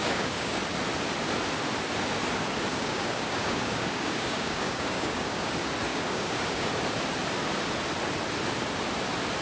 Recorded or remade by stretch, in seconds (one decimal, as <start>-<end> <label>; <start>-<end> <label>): 0.0-0.6 remade; 0.6-2.7 recorded; 2.7-5.5 remade; 5.5-5.9 recorded; 5.9-6.7 remade; 6.7-9.4 recorded